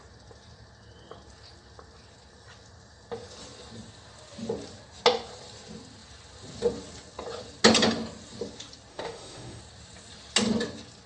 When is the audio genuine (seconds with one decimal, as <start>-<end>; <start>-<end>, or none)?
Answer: 0.0-8.9; 9.6-11.1